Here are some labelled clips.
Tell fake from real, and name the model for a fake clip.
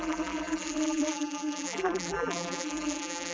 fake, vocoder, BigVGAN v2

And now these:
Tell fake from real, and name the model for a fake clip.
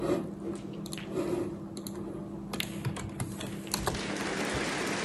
real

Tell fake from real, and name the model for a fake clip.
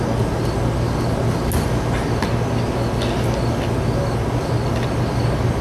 real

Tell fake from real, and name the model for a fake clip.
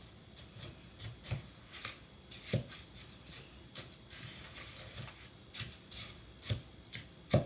real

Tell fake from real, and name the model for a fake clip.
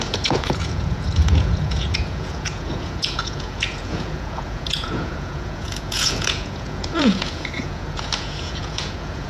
fake, vocoder, Vocos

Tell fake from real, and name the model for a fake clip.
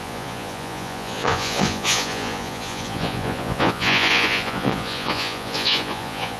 fake, vocoder, Vocos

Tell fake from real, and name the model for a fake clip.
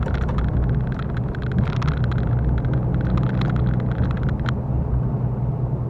real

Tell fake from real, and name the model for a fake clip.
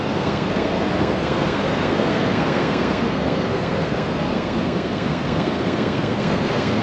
fake, codec, SNAC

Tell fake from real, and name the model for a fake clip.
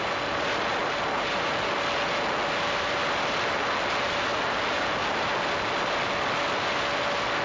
real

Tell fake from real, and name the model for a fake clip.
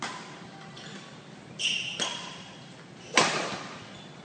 real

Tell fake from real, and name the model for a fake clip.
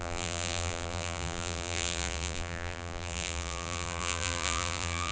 fake, vocoder, BigVGAN v2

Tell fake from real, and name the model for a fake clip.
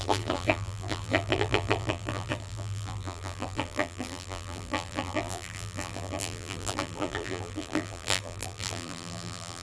fake, vocoder, BigVGAN v2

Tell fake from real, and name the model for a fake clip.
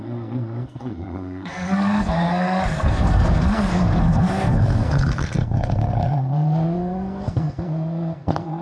fake, codec, SNAC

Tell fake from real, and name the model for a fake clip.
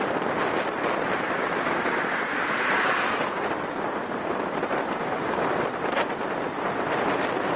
real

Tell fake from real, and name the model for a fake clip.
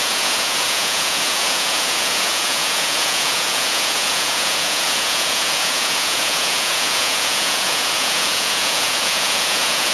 fake, vocoder, Vocos